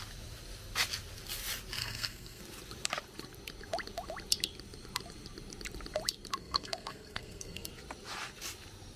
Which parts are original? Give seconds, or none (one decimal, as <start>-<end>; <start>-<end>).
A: 0.0-1.8; 2.4-6.4; 7.7-9.0